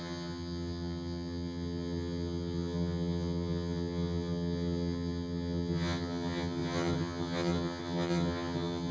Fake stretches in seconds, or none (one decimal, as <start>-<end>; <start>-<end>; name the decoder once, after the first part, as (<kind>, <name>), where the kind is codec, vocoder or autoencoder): 0.0-8.9 (vocoder, HiFi-GAN)